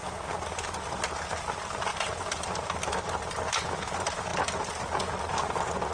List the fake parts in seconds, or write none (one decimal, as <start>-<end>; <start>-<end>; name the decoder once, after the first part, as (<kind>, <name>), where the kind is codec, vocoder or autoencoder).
1.9-2.9 (vocoder, BigVGAN v2)